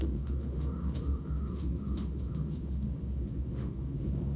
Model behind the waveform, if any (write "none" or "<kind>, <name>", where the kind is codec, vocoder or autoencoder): autoencoder, DAC-VAE